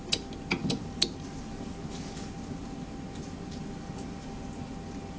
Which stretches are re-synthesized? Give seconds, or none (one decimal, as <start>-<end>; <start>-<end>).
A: none